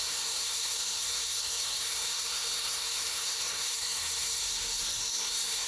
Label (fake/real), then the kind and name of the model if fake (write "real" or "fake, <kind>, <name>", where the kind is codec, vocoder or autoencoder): fake, codec, SNAC